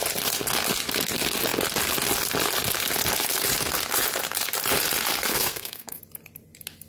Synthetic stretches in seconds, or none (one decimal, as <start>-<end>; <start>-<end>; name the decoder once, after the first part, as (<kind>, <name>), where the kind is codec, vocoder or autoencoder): 5.3-6.0 (codec, SNAC)